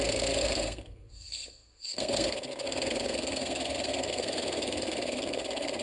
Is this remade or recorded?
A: remade